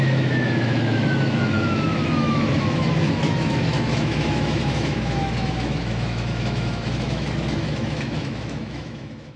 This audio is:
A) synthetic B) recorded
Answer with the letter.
A